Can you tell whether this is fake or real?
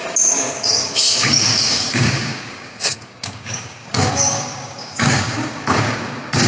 fake